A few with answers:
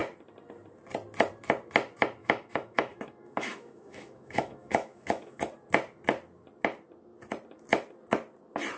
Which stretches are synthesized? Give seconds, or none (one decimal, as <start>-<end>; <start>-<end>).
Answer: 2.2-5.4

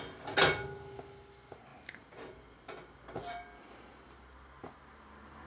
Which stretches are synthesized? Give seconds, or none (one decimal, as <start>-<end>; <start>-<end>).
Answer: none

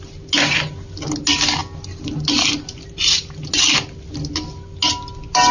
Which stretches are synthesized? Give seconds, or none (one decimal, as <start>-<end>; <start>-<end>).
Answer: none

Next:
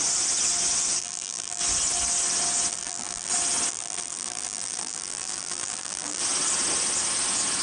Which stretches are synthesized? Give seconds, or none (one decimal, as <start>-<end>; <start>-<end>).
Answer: 1.0-1.6; 2.7-3.3; 3.7-6.2

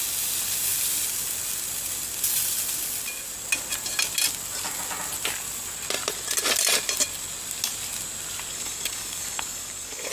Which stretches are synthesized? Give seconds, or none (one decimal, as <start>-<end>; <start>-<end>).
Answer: 8.5-10.1